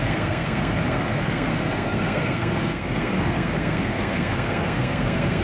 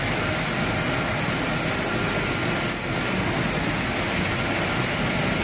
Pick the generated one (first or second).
first